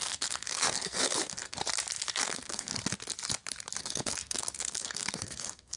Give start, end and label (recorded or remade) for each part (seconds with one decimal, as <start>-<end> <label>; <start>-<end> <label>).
0.0-1.6 remade; 1.6-2.2 recorded; 2.2-2.7 remade; 2.7-3.8 recorded; 3.8-5.8 remade